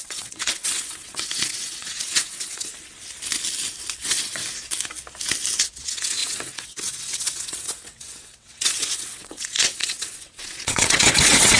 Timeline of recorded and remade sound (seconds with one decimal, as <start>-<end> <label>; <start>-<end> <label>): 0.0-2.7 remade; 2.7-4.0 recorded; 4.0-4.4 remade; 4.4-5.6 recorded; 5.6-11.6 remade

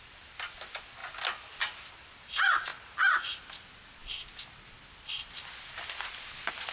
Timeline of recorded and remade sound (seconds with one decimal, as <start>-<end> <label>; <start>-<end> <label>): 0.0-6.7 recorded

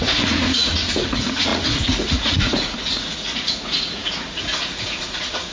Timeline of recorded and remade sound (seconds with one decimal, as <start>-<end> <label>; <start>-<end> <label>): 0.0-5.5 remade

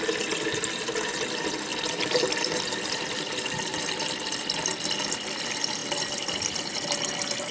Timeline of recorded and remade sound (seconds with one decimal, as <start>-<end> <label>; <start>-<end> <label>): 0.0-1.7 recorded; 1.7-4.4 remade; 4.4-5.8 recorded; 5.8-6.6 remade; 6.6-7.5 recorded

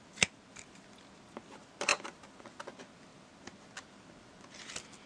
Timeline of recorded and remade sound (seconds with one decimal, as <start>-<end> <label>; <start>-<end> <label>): 0.0-5.1 recorded

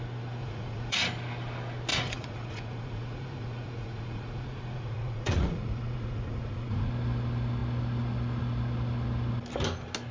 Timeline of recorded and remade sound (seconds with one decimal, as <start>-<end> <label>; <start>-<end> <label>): 0.0-0.4 recorded; 0.4-1.0 remade; 1.0-1.9 recorded; 1.9-6.9 remade; 6.9-10.1 recorded

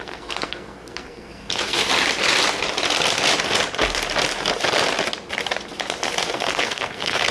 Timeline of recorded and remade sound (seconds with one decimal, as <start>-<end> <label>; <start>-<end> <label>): 0.0-1.8 remade; 1.8-6.2 recorded; 6.2-7.3 remade

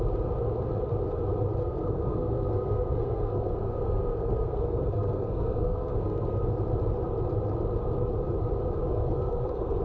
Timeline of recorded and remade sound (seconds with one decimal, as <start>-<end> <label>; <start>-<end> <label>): 0.0-1.6 recorded; 1.6-6.5 remade; 6.5-8.9 recorded; 8.9-9.8 remade